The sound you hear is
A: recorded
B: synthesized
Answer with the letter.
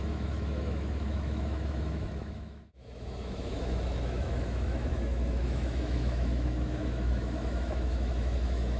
B